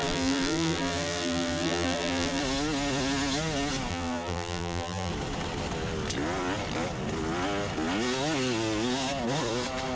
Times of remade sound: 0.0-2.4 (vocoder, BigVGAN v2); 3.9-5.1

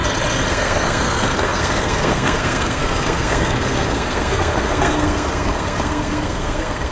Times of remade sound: 0.5-6.9 (codec, SNAC)

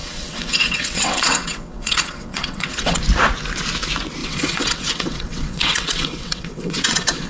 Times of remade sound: 0.0-3.0 (vocoder, WaveNeXt); 4.2-7.3

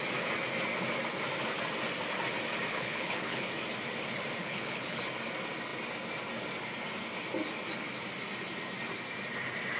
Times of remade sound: 2.7-3.5 (codec, HILCodec); 4.4-5.0

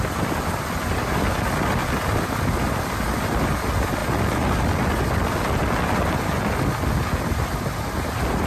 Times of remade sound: none

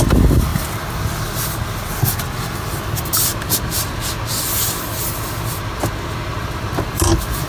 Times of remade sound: 3.3-4.1 (vocoder, BigVGAN v2); 6.4-7.1

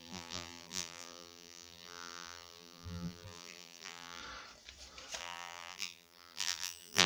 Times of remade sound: 0.0-4.2 (vocoder, BigVGAN v2); 5.2-7.1